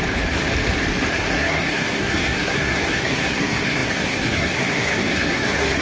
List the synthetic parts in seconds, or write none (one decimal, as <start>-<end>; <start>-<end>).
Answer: 1.1-5.8